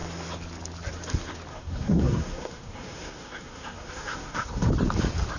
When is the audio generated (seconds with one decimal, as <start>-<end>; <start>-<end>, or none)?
1.5-4.7